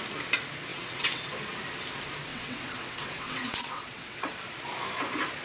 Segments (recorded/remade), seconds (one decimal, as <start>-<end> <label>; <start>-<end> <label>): 0.0-0.7 recorded; 0.7-1.2 remade; 1.2-2.3 recorded; 2.3-4.6 remade; 4.6-5.4 recorded